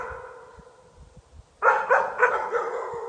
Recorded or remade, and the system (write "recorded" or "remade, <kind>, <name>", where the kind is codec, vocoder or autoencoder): recorded